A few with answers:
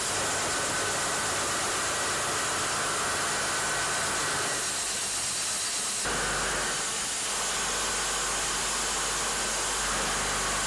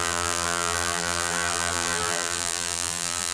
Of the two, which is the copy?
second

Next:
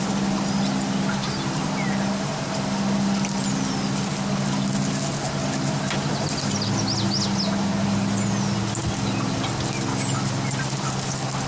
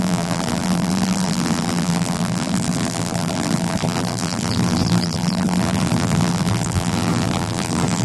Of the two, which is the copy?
second